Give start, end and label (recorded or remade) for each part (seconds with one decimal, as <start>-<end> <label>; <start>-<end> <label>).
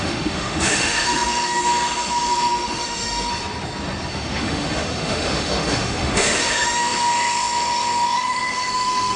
0.0-3.3 remade; 3.3-4.1 recorded; 4.1-9.2 remade